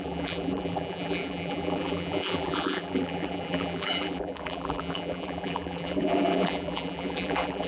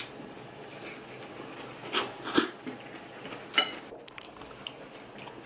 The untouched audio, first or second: second